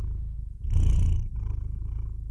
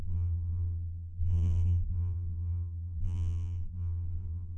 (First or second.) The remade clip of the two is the second